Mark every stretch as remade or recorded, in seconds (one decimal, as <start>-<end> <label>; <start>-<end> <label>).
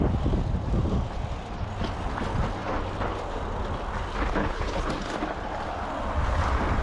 0.0-4.4 recorded; 4.4-4.9 remade; 4.9-6.8 recorded